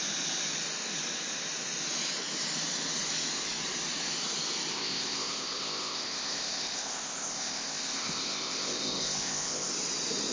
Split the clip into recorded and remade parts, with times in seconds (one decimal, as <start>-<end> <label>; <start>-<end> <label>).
0.0-4.7 recorded; 4.7-9.7 remade; 9.7-10.3 recorded